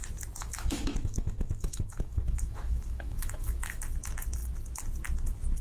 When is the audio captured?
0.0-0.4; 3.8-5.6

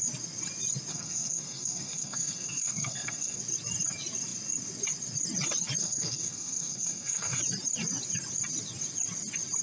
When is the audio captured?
0.0-0.9; 3.4-5.8; 7.4-9.6

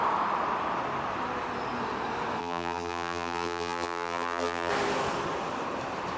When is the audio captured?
0.0-2.4; 4.7-6.2

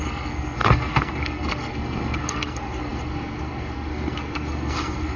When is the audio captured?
none

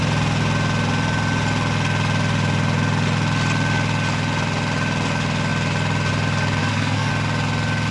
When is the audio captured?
0.0-6.6; 7.1-7.9